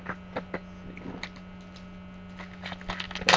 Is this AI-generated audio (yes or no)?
no